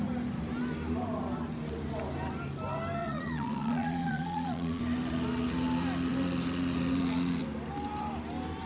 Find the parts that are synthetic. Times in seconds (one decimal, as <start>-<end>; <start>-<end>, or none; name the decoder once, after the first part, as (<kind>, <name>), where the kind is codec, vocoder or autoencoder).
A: 3.0-4.8 (vocoder, Vocos)